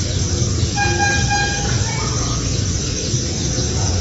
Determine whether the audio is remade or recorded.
recorded